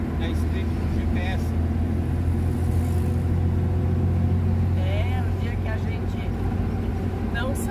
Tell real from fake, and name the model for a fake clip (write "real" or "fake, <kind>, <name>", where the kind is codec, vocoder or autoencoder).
real